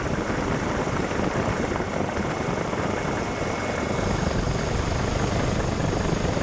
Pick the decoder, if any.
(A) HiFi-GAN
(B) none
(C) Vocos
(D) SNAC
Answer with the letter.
B